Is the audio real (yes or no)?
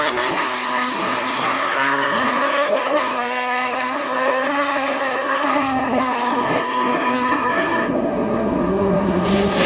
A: no